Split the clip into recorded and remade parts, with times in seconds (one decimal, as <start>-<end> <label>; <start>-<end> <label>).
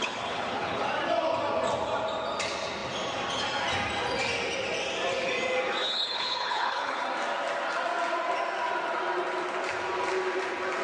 0.0-0.8 remade; 0.8-5.8 recorded; 5.8-7.0 remade; 7.0-10.8 recorded